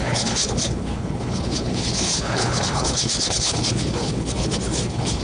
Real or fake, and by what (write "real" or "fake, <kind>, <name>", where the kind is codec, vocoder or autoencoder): fake, codec, HILCodec